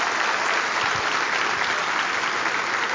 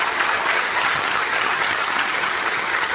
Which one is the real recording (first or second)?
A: first